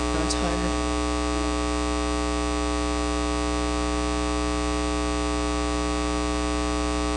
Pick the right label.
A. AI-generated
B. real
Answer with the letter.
B